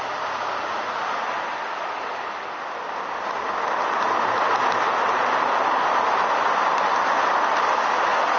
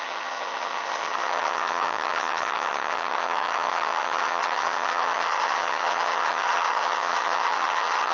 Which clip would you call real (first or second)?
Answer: first